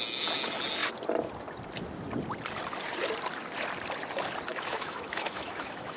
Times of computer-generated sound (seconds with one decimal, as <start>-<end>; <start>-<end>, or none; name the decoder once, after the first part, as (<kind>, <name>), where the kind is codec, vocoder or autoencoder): 4.5-6.0 (autoencoder, DAC-VAE)